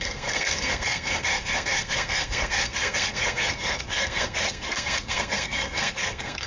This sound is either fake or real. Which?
fake